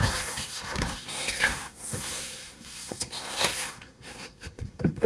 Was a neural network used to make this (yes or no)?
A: yes